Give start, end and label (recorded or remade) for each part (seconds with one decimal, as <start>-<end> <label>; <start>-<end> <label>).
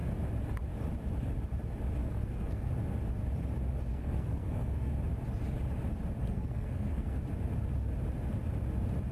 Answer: 0.0-2.0 recorded; 2.0-2.7 remade; 2.7-3.9 recorded; 3.9-4.9 remade; 4.9-6.2 recorded; 6.2-7.2 remade; 7.2-9.1 recorded